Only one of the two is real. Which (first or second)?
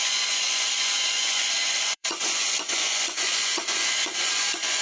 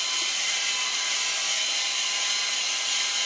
second